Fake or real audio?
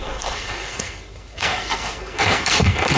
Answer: fake